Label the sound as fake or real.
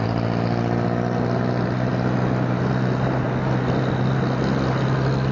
real